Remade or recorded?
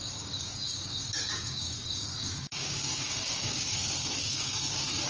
remade